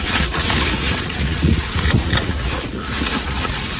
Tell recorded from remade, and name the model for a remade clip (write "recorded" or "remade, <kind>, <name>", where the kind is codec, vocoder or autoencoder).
remade, vocoder, Vocos